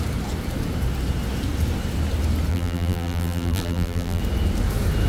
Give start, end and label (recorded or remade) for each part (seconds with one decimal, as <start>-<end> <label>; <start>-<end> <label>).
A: 0.0-2.5 recorded; 2.5-4.2 remade; 4.2-5.1 recorded